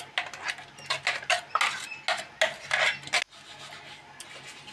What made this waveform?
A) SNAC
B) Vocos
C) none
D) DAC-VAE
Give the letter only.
C